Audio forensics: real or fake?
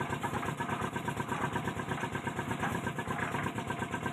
real